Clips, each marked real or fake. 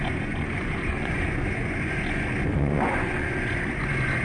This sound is fake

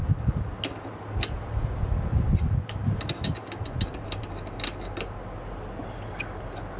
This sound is real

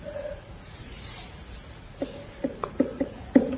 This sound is fake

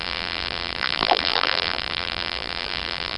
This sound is fake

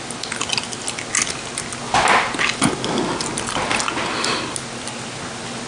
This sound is real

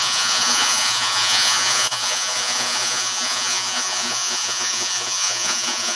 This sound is fake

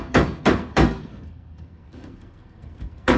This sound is fake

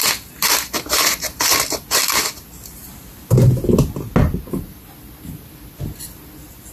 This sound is real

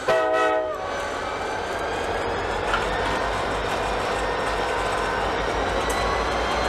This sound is real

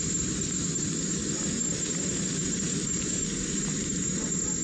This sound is real